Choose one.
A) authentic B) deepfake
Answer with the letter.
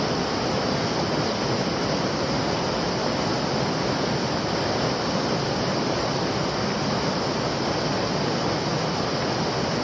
A